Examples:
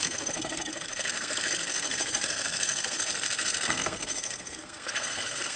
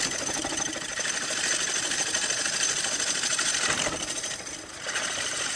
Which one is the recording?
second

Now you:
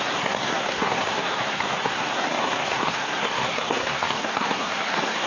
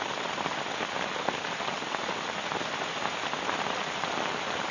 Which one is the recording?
second